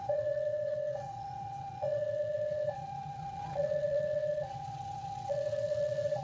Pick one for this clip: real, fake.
fake